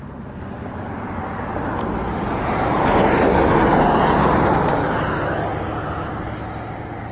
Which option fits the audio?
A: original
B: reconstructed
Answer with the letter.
A